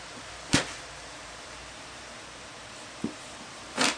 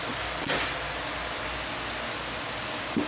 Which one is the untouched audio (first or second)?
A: second